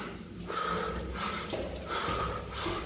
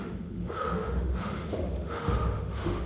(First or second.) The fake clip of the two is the second